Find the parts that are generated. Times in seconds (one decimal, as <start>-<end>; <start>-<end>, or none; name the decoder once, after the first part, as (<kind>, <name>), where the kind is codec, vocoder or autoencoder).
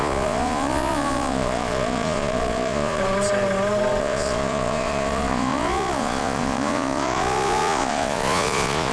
0.0-3.0 (vocoder, Vocos); 4.0-8.9